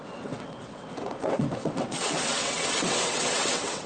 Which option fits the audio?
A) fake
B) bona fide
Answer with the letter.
A